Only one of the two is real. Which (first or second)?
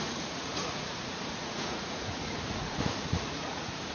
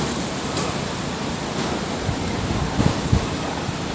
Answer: second